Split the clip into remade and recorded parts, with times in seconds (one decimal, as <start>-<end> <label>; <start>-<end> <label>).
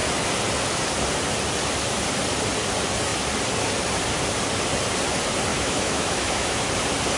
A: 0.0-5.5 recorded; 5.5-6.6 remade; 6.6-7.2 recorded